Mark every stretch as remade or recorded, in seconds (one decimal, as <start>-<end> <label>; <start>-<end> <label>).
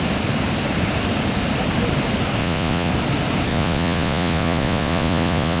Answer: 0.0-2.4 recorded; 2.4-2.9 remade; 2.9-3.5 recorded; 3.5-5.6 remade